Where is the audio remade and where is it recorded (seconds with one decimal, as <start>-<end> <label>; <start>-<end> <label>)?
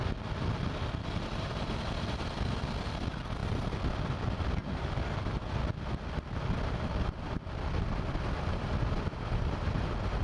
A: 0.0-10.2 recorded